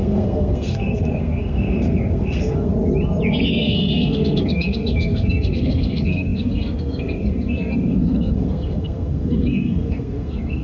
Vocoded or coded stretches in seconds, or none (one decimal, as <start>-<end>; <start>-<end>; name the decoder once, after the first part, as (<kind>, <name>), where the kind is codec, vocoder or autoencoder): 0.0-2.7 (codec, SNAC); 3.5-10.6